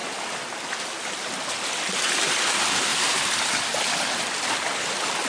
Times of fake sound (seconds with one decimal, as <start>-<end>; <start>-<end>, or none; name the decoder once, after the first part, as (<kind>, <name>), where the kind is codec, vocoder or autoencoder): none